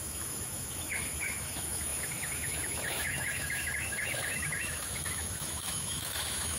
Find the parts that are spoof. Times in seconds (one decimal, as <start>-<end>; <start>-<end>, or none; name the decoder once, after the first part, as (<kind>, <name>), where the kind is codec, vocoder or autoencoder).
0.0-6.6 (autoencoder, DAC-VAE)